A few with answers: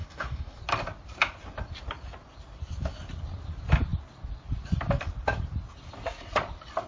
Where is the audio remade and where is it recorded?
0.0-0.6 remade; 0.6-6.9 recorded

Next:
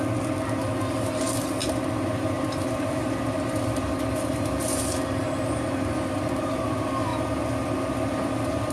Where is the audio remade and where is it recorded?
0.0-8.7 recorded